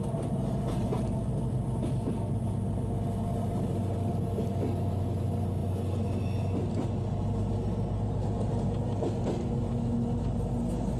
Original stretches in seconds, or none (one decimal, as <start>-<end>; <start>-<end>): 0.0-11.0